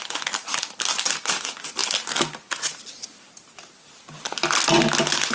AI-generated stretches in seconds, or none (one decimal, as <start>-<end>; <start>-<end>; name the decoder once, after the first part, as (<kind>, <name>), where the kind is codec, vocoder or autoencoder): none